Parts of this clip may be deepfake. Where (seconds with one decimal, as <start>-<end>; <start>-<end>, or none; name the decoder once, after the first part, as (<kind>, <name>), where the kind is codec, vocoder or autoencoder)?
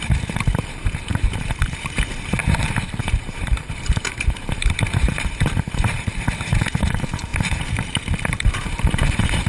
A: 0.0-2.4 (vocoder, BigVGAN v2); 3.0-9.5